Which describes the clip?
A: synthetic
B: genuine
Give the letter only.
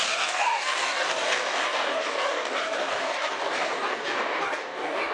A